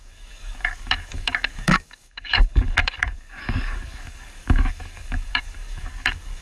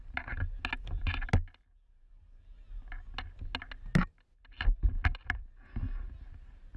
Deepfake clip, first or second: first